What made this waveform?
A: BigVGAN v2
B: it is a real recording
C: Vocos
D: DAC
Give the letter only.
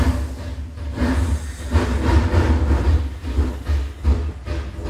B